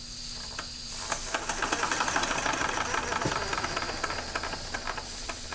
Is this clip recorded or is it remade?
remade